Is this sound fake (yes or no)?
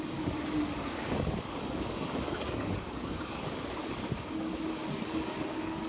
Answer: yes